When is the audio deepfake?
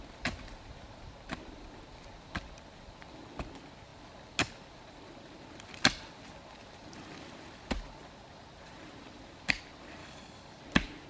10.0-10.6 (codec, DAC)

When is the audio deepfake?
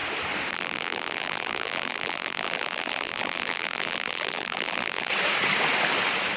0.5-5.1 (vocoder, BigVGAN v2)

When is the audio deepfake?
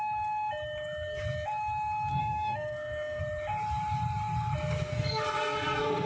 2.1-3.2 (codec, SNAC); 4.9-6.1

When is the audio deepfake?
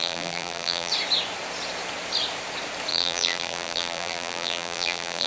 0.0-0.9 (vocoder, BigVGAN v2); 2.9-5.3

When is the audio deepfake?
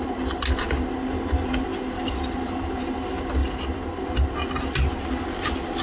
none